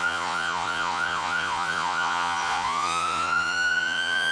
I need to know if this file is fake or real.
fake